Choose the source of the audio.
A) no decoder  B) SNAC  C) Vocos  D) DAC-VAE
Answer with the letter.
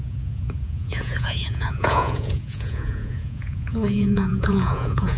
C